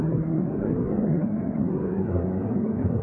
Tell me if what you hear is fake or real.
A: fake